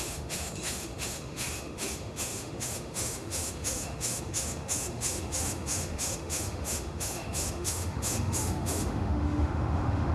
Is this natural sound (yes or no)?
no